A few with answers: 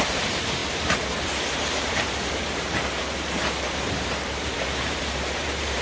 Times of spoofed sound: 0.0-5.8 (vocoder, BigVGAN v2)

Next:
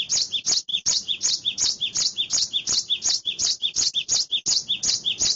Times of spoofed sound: 0.7-3.9 (vocoder, BigVGAN v2)

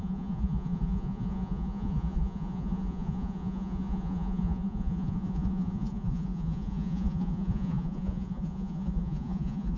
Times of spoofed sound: 0.0-9.8 (vocoder, Vocos)

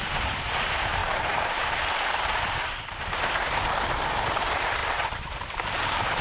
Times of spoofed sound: 1.0-3.2 (vocoder, BigVGAN v2); 4.8-6.2

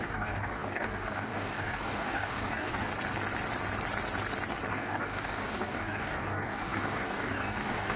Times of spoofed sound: 0.0-2.9 (codec, DAC); 4.7-8.0